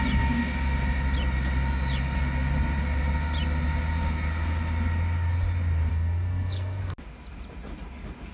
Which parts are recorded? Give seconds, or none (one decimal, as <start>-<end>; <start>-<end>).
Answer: 0.0-5.9; 6.8-8.3